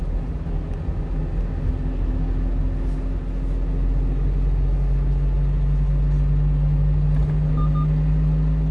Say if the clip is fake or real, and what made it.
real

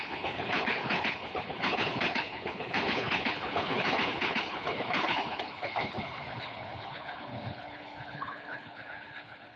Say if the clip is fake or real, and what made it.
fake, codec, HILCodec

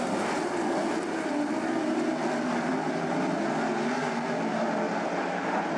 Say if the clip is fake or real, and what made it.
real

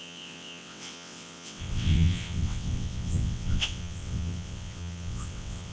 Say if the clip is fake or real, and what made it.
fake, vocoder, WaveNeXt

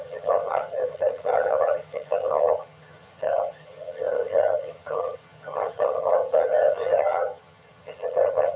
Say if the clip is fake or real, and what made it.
fake, vocoder, HiFi-GAN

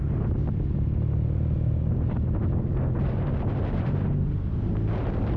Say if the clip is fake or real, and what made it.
fake, vocoder, BigVGAN v2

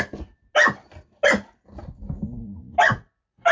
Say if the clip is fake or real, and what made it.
real